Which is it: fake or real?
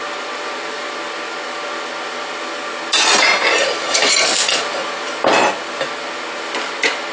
real